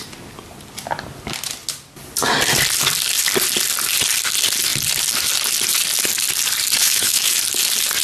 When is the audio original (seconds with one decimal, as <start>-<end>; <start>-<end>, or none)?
0.0-6.8; 7.4-8.0